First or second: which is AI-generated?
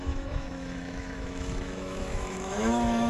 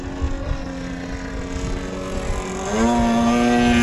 first